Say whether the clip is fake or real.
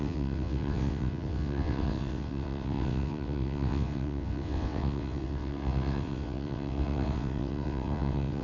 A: fake